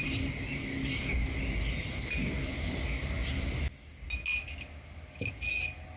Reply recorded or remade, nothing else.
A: recorded